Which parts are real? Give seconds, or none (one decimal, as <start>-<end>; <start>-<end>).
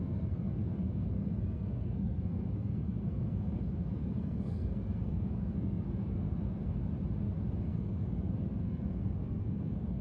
6.8-7.6